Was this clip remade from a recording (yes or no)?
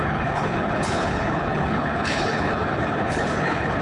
yes